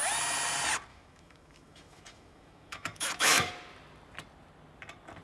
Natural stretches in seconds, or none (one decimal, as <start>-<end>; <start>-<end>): 0.0-0.9; 3.5-5.2